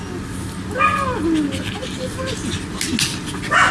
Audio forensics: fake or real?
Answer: real